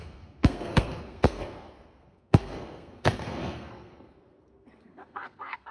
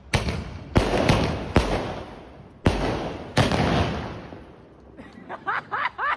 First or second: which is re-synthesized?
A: first